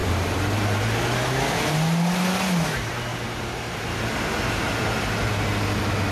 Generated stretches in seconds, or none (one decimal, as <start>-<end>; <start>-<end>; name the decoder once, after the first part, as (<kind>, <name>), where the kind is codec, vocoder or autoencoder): 0.0-0.8 (vocoder, BigVGAN v2); 3.1-3.8